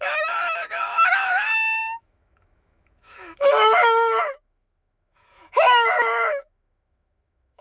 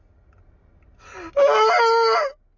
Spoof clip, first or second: first